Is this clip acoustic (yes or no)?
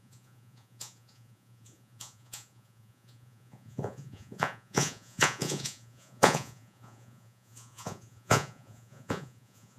no